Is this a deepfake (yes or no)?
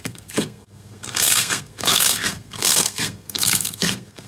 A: yes